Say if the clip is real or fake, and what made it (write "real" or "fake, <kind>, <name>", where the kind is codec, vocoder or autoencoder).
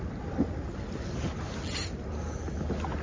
real